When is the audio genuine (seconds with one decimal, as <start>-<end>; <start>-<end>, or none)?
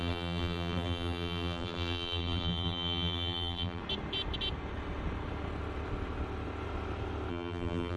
3.8-7.3